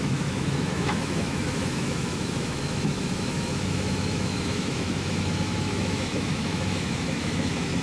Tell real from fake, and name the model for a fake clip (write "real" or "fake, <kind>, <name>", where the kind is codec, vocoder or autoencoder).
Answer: fake, autoencoder, DAC-VAE